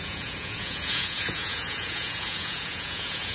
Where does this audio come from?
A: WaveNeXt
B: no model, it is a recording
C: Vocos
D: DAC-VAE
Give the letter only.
C